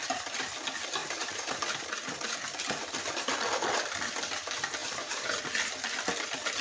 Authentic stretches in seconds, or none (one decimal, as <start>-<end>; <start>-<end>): 0.0-1.0; 1.6-4.8; 5.4-6.6